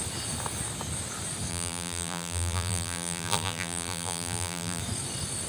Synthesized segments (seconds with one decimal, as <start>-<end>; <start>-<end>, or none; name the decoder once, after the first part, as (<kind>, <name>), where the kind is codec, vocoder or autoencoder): 1.5-4.8 (vocoder, BigVGAN v2)